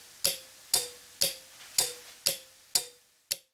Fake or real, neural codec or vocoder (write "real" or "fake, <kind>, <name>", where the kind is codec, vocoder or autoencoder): real